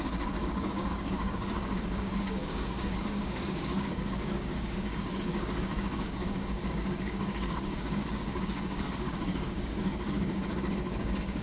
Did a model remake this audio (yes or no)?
yes